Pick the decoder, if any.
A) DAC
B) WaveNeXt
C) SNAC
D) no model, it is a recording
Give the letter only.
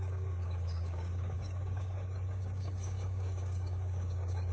A